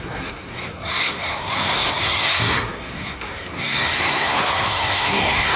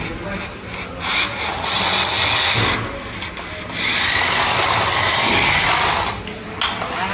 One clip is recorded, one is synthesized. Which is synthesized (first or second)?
first